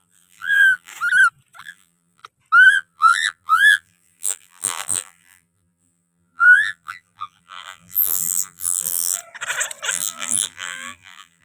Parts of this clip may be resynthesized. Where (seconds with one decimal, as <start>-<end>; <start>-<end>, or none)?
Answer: 0.0-0.9; 1.6-2.2; 2.7-9.2; 9.9-11.4